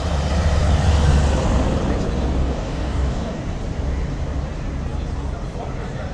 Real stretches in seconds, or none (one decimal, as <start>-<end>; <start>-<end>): 0.0-2.4; 3.4-6.1

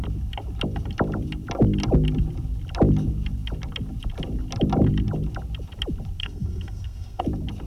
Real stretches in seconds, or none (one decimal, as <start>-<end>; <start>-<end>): 0.0-6.2; 7.2-7.7

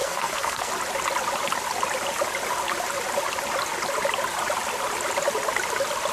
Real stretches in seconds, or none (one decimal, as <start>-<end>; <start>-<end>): 0.7-6.1

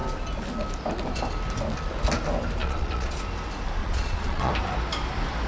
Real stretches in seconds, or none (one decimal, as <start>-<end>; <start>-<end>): 0.0-2.6; 3.2-3.8; 4.5-5.5

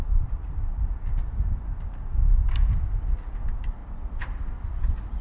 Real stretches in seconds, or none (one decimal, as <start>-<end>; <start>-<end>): 0.0-5.2

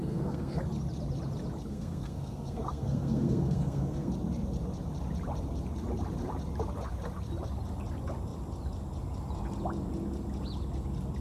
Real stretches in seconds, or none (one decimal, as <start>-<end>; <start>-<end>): 0.6-1.7; 4.1-11.2